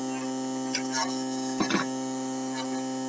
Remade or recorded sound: recorded